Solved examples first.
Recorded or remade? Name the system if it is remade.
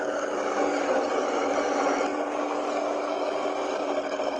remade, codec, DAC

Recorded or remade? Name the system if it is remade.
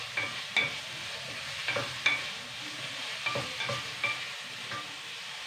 recorded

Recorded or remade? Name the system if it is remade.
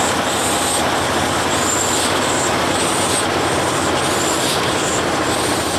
recorded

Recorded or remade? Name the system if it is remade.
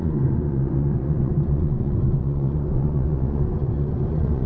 remade, vocoder, Vocos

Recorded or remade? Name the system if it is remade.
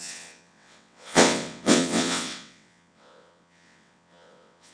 remade, vocoder, WaveNeXt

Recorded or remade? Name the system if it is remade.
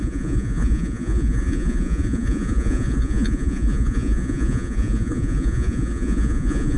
remade, vocoder, Vocos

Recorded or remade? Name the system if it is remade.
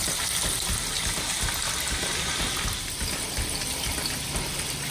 recorded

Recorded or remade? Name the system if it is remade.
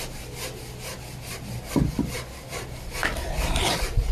remade, vocoder, BigVGAN v2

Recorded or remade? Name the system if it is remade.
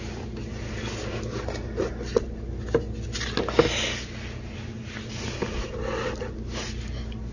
recorded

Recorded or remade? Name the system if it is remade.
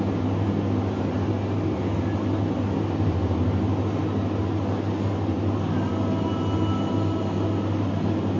recorded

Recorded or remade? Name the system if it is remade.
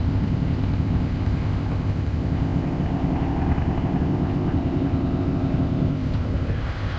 remade, codec, ZipCodec